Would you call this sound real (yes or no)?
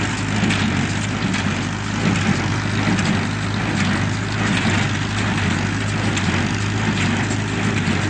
yes